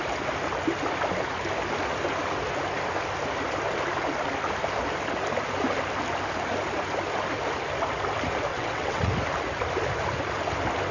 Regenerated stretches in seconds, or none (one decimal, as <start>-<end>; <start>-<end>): 8.5-9.1